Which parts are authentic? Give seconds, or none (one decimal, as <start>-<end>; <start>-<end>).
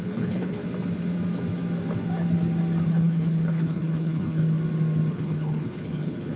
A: 0.6-2.9; 4.4-5.1